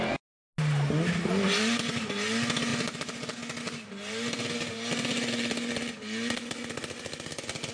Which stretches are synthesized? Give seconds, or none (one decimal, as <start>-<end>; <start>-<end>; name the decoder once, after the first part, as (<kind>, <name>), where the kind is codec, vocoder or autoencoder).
none